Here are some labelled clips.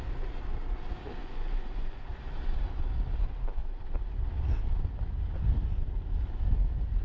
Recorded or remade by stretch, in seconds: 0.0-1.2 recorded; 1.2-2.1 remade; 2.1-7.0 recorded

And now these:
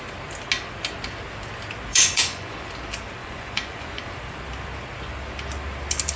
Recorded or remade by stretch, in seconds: 0.0-1.9 recorded; 1.9-2.7 remade; 2.7-3.2 recorded; 3.2-4.0 remade; 4.0-6.2 recorded

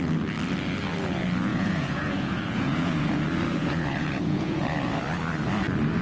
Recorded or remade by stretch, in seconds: 0.0-1.5 recorded; 1.5-3.1 remade; 3.1-3.6 recorded; 3.6-4.6 remade; 4.6-6.0 recorded

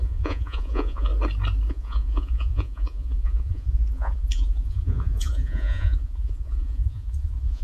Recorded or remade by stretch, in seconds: 0.0-1.1 remade; 1.1-1.7 recorded; 1.7-7.6 remade

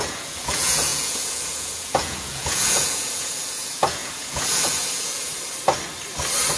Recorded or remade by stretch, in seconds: 0.0-5.3 remade; 5.3-6.6 recorded

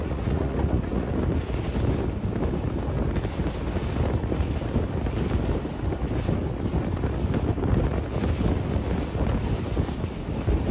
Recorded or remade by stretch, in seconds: 0.0-1.1 remade; 1.1-10.7 recorded